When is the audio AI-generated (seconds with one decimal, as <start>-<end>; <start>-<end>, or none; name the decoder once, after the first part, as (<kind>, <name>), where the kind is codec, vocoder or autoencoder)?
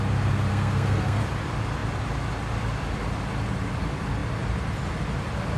0.5-1.2 (codec, SNAC)